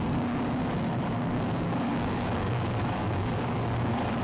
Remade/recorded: remade